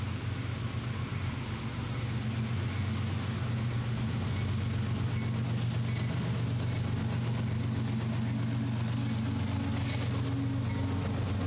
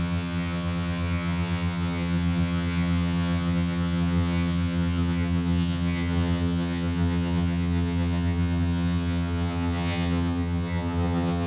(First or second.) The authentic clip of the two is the first